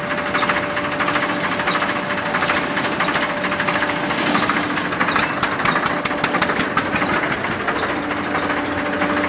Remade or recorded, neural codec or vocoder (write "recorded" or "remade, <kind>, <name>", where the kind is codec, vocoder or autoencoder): recorded